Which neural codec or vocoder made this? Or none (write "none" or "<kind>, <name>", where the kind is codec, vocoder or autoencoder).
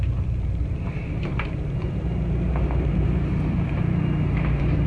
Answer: vocoder, BigVGAN v2